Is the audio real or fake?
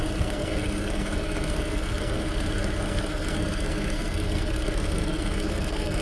fake